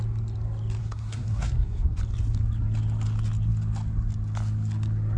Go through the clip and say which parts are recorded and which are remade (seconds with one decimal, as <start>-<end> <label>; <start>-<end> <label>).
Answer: 0.0-0.8 recorded; 0.8-2.0 remade; 2.0-5.2 recorded